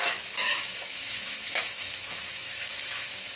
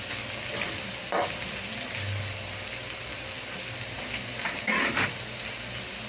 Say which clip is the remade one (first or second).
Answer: first